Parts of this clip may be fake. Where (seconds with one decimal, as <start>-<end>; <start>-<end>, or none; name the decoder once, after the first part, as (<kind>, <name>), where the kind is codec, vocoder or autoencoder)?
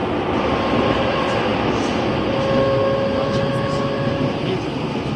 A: none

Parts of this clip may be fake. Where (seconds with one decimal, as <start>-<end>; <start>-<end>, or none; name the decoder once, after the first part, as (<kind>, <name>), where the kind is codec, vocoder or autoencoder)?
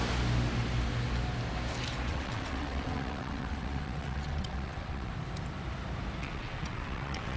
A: 2.1-5.1 (vocoder, WaveNeXt); 6.2-7.4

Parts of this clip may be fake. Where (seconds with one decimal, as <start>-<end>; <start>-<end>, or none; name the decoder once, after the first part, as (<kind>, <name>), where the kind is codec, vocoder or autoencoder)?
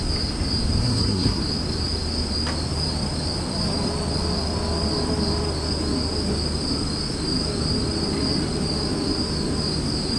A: 0.8-1.4 (codec, SNAC)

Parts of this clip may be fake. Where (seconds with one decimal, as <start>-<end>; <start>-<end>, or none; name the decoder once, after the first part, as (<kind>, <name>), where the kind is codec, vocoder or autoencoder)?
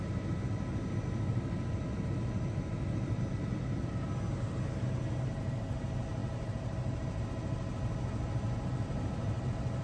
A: 6.2-7.2 (vocoder, BigVGAN v2)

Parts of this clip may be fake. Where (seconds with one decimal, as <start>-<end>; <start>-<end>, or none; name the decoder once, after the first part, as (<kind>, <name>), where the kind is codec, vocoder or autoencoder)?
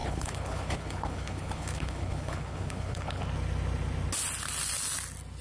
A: 0.0-3.2 (codec, HILCodec)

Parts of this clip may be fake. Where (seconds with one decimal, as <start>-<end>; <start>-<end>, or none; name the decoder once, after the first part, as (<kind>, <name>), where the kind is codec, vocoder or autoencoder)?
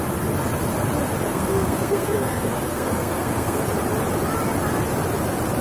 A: 1.3-3.7 (codec, SNAC)